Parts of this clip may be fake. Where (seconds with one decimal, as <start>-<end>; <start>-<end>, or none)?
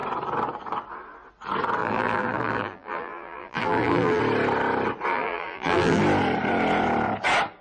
1.8-4.2; 5.1-6.0